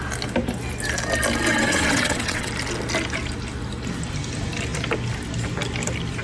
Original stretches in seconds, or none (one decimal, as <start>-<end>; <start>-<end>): 0.0-1.5; 2.5-6.2